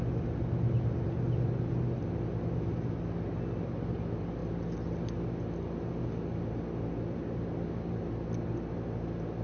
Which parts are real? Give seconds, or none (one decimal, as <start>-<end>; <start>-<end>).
0.0-9.4